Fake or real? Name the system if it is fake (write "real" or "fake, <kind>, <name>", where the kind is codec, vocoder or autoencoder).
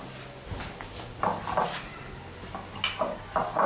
real